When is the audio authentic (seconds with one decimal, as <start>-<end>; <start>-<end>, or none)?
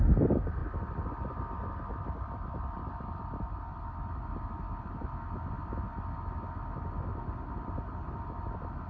0.0-8.9